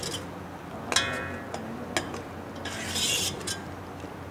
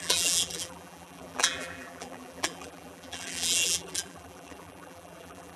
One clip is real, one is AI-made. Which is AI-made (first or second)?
second